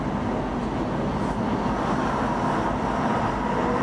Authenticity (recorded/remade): recorded